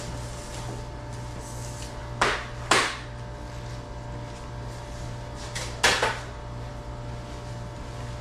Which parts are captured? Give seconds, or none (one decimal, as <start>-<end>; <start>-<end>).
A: 0.0-8.2